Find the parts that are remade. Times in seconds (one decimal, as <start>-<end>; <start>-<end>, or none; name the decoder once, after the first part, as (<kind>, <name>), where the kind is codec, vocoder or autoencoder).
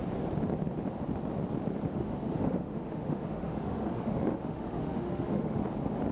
1.9-5.6 (autoencoder, DAC-VAE)